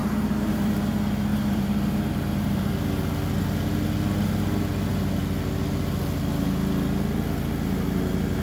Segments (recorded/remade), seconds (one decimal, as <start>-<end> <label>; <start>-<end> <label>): 0.0-0.7 remade; 0.7-1.3 recorded; 1.3-2.7 remade; 2.7-8.4 recorded